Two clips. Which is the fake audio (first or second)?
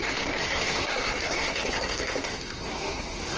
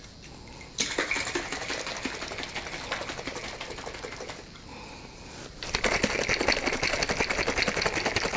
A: first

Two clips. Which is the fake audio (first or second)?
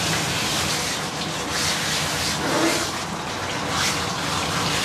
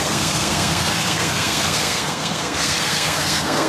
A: second